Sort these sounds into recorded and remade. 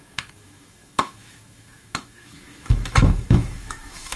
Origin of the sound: remade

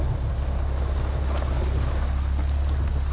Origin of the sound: recorded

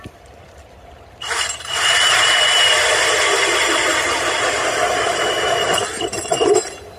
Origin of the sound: recorded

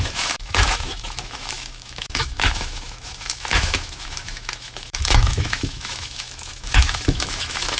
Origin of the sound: remade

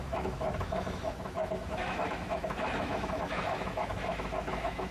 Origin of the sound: remade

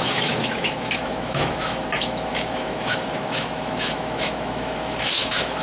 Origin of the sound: remade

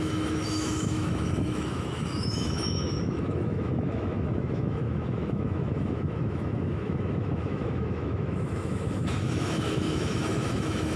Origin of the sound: remade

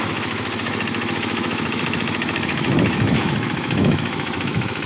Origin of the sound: remade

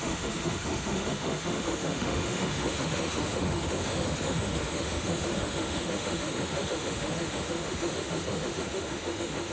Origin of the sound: remade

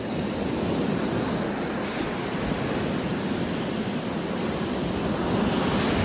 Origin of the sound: recorded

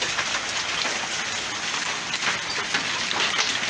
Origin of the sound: recorded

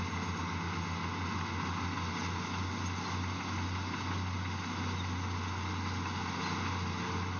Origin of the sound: recorded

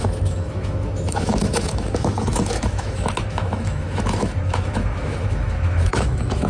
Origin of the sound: remade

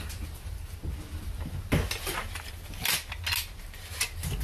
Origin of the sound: recorded